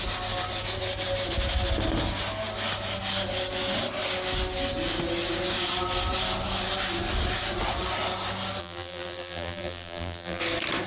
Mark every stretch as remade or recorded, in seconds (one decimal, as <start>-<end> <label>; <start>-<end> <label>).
0.0-8.6 recorded; 8.6-10.4 remade; 10.4-10.9 recorded